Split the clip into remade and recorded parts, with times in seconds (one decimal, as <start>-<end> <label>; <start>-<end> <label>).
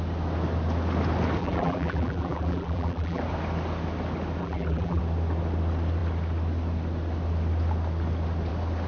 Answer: 0.0-1.4 recorded; 1.4-3.2 remade; 3.2-4.4 recorded; 4.4-5.0 remade; 5.0-8.9 recorded